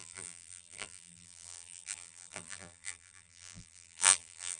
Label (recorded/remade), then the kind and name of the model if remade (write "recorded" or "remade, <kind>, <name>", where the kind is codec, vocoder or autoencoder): remade, vocoder, BigVGAN v2